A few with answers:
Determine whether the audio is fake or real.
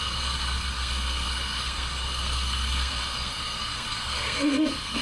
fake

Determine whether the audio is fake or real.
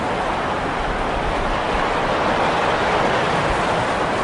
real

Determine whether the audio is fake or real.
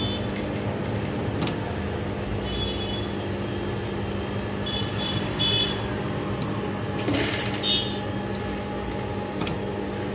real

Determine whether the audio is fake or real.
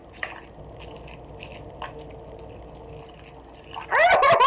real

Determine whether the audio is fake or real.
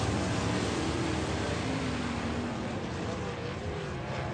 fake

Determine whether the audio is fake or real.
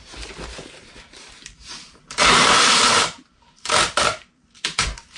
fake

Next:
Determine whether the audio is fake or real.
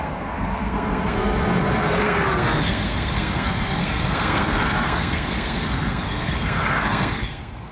fake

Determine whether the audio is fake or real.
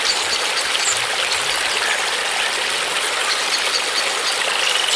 real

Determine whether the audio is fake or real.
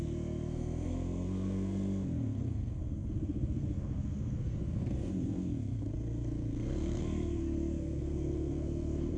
fake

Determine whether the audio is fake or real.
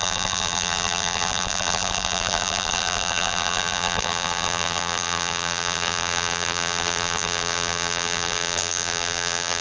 fake